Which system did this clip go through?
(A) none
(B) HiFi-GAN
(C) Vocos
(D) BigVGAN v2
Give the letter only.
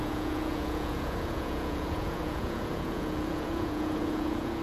C